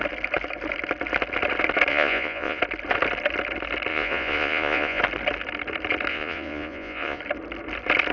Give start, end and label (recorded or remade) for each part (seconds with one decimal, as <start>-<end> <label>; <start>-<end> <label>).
0.0-1.9 recorded; 1.9-2.6 remade; 2.6-3.9 recorded; 3.9-5.0 remade; 5.0-6.1 recorded; 6.1-7.2 remade; 7.2-8.1 recorded